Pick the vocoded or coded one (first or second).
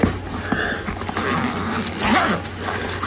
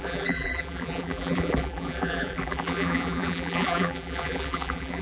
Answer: second